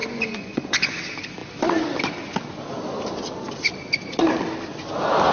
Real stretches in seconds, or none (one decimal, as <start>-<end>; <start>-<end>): 0.8-5.3